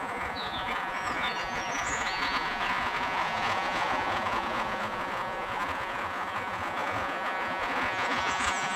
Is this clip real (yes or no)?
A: no